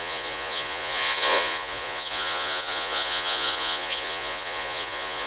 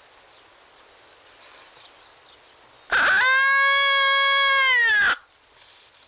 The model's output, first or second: first